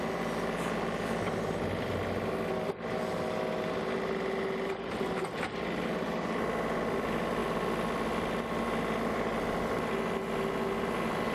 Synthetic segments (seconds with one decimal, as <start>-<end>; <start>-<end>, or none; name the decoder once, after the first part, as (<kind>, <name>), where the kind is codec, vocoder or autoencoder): none